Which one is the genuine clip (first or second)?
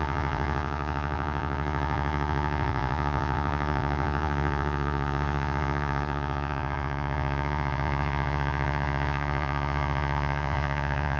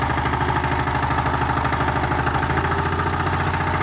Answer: second